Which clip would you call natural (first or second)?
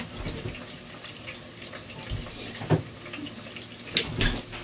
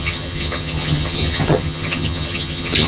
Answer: first